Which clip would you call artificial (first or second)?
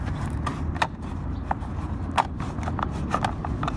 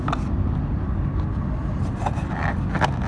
first